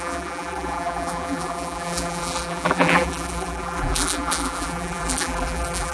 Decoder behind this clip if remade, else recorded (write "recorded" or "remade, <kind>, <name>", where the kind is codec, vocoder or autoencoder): remade, vocoder, BigVGAN v2